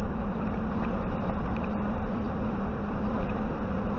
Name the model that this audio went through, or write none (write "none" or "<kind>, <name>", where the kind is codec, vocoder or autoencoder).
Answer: vocoder, BigVGAN v2